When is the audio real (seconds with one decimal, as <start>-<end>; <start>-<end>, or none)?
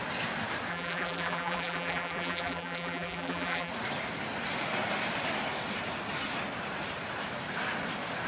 0.0-0.7; 3.7-8.3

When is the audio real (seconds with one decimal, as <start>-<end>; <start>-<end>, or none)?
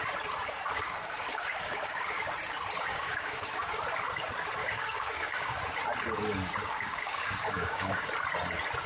0.0-0.7; 2.2-2.9; 3.8-4.6; 5.6-6.6; 8.1-8.9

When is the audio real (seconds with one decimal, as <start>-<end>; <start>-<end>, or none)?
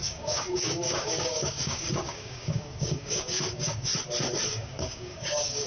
3.9-4.5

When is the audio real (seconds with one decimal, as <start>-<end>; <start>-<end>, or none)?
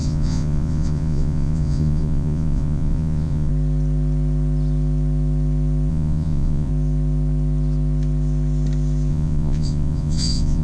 3.5-5.9; 6.7-9.1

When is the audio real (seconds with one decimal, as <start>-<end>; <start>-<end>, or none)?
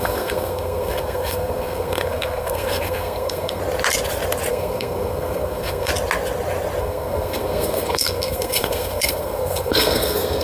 3.6-4.5; 5.9-6.8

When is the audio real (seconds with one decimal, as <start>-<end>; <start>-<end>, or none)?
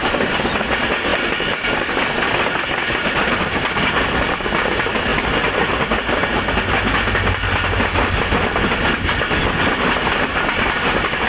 0.0-11.3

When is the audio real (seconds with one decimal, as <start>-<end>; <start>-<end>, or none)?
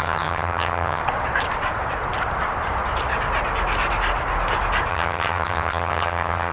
1.0-4.9